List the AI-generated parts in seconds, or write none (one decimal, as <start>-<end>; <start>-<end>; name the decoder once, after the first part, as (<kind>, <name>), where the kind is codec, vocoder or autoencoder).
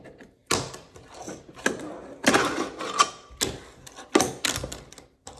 none